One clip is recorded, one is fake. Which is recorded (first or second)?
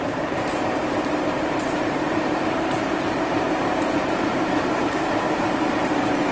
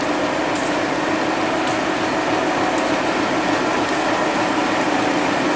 second